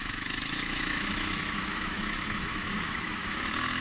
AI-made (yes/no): yes